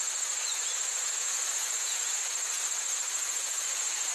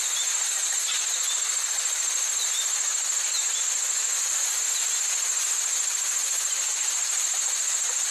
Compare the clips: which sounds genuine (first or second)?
second